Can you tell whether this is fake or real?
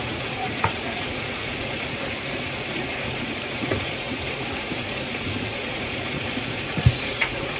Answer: fake